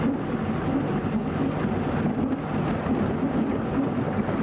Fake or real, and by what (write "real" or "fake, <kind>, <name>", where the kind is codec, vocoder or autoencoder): real